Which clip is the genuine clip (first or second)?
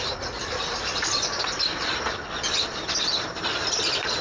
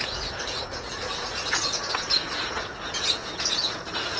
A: first